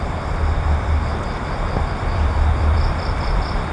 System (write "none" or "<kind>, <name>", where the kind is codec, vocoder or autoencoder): vocoder, BigVGAN v2